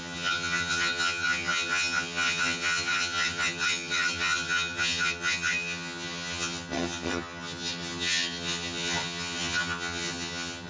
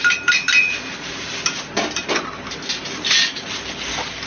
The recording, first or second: second